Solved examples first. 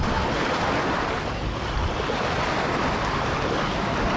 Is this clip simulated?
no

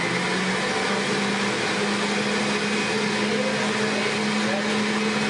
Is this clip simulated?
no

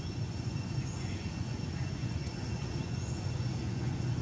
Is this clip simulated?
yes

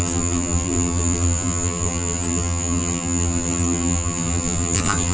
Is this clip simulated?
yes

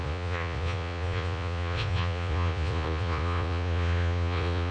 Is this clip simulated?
yes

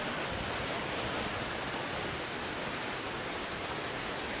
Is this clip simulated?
no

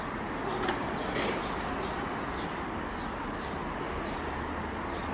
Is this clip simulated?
no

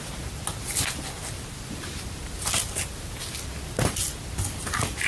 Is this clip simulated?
no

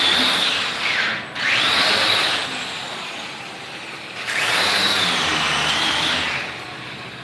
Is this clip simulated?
yes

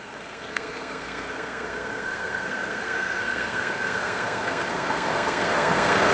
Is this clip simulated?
yes